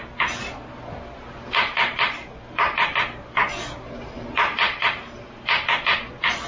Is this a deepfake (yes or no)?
no